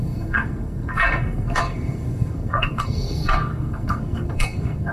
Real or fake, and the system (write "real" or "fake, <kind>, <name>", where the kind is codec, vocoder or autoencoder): fake, codec, SNAC